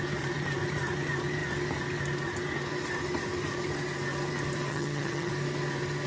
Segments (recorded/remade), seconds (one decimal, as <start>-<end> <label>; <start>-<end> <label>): 0.0-4.7 recorded; 4.7-5.3 remade; 5.3-6.1 recorded